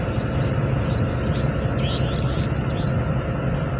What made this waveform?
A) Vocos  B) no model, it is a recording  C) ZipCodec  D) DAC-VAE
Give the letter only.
B